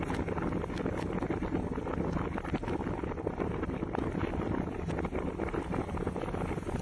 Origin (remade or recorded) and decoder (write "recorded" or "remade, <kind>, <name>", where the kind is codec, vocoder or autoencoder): recorded